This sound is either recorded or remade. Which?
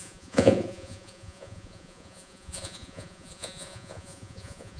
remade